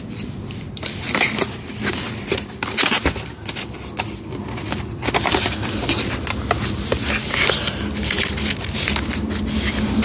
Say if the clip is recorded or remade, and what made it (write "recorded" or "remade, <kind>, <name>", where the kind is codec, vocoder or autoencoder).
recorded